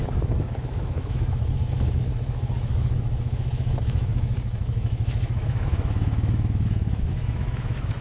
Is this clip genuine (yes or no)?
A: no